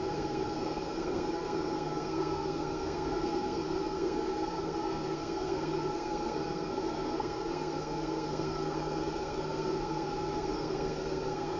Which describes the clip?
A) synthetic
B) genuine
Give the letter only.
A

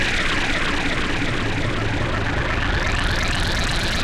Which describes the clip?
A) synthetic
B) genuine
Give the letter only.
B